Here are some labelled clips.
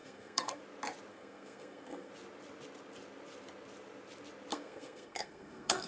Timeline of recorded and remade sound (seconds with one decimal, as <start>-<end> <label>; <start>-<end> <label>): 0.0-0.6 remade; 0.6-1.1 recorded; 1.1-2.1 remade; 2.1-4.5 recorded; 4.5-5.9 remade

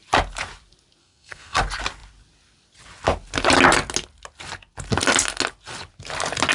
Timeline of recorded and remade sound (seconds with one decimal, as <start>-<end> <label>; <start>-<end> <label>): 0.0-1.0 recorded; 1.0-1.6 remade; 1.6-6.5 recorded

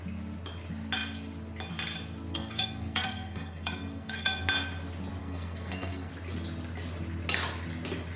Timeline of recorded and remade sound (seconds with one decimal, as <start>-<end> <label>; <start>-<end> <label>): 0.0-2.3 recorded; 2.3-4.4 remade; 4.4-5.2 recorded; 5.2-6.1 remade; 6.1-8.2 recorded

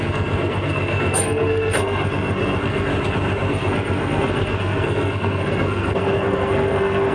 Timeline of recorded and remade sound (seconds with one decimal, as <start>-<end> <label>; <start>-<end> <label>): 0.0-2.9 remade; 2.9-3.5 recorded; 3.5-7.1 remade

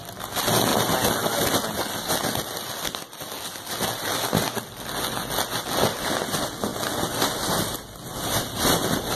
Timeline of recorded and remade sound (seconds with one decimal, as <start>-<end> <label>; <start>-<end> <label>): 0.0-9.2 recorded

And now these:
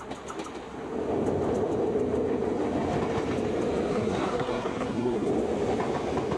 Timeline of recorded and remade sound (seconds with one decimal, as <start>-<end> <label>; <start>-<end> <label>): 0.0-3.9 recorded; 3.9-5.3 remade; 5.3-6.4 recorded